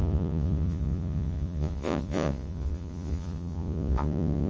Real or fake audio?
fake